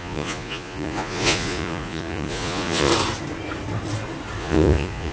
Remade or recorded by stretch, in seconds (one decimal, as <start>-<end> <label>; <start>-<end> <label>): 0.0-2.9 remade; 2.9-4.4 recorded; 4.4-5.1 remade

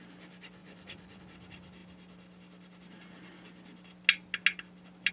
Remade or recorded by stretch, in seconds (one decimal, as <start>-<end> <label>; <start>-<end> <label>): 0.0-0.6 recorded; 0.6-1.2 remade; 1.2-5.1 recorded

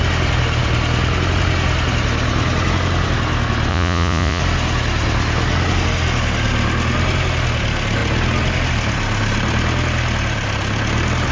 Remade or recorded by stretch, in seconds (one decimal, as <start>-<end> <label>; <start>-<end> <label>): 0.0-3.7 recorded; 3.7-4.4 remade; 4.4-11.3 recorded